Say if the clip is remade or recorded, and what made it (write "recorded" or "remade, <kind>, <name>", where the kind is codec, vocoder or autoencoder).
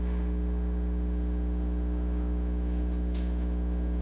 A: remade, autoencoder, DAC-VAE